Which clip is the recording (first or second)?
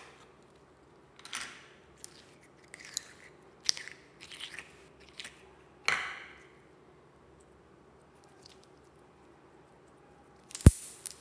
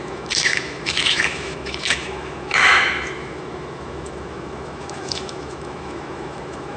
first